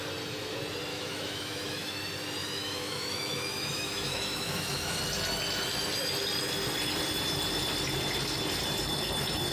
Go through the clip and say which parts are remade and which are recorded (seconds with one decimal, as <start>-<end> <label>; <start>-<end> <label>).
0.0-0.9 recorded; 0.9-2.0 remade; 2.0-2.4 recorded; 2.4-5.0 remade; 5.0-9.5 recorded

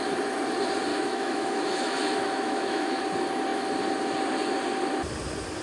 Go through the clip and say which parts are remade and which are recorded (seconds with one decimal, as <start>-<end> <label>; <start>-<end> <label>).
0.0-0.9 recorded; 0.9-3.0 remade; 3.0-5.6 recorded

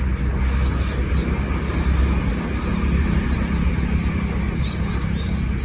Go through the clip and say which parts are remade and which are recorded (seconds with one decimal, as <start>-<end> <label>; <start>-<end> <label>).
0.0-5.6 recorded